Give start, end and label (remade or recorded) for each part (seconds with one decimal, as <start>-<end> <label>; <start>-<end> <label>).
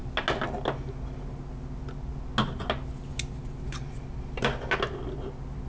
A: 0.0-5.7 recorded